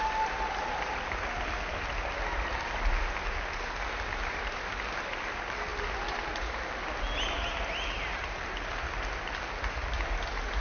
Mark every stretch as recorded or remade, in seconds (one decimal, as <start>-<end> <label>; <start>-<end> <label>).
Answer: 0.0-10.6 recorded